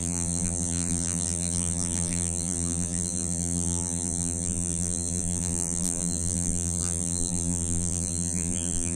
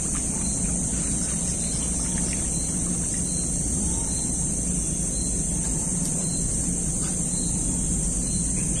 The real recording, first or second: second